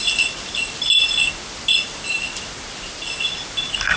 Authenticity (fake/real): real